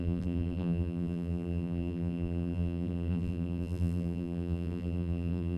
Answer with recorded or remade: remade